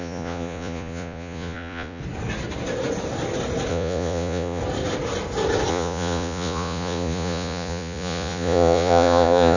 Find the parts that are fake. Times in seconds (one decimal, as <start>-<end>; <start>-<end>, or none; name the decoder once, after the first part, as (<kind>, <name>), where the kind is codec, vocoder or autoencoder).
0.0-2.0 (vocoder, Vocos); 3.7-4.6; 5.7-9.6